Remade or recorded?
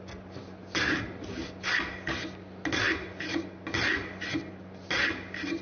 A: recorded